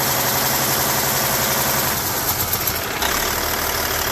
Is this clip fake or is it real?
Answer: real